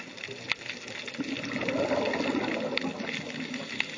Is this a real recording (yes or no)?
yes